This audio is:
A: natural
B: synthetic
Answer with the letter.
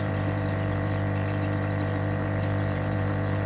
B